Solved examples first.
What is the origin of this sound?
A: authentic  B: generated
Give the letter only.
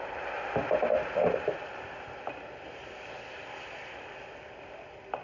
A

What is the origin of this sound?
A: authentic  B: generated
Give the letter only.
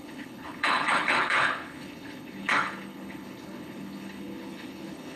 B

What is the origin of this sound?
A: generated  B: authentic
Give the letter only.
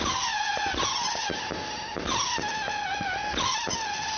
B